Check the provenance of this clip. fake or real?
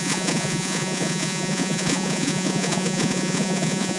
fake